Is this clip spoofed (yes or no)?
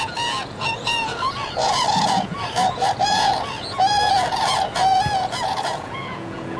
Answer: yes